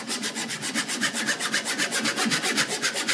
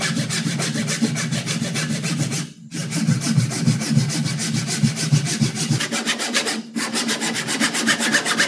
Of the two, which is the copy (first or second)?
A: first